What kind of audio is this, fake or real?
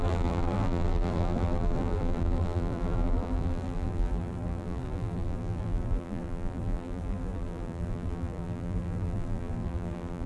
fake